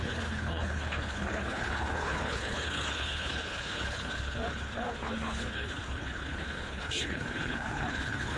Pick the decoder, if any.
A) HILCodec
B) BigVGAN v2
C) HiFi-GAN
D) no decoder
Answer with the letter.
A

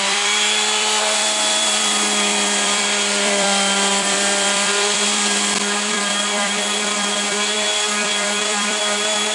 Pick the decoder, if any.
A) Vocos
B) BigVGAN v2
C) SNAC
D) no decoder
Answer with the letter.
B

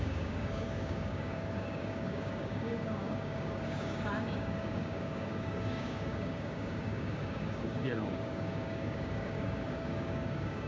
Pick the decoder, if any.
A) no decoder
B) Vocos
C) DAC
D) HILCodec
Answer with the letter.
C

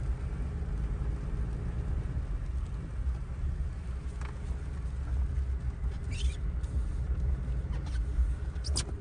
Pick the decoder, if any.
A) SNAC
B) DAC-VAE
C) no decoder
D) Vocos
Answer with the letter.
C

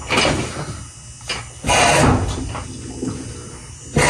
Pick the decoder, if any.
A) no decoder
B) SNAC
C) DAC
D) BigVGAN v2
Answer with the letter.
A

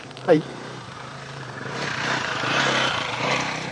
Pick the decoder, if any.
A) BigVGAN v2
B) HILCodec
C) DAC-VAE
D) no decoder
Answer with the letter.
A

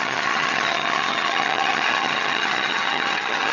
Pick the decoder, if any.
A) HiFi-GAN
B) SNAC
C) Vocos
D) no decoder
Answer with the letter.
A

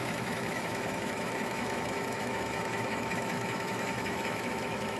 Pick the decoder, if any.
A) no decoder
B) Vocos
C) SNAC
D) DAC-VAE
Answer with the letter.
D